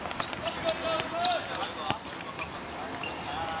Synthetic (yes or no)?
no